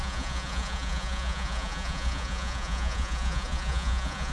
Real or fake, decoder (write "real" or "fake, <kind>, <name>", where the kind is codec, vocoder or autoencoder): fake, vocoder, Vocos